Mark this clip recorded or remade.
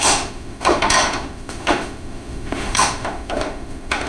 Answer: remade